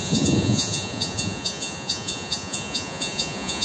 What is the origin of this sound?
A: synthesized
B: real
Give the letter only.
A